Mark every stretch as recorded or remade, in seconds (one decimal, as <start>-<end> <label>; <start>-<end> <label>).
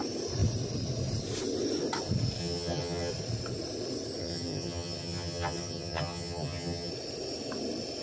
0.0-2.4 recorded; 2.4-3.1 remade; 3.1-4.2 recorded; 4.2-6.9 remade; 6.9-8.0 recorded